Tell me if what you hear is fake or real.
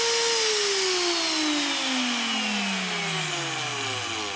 real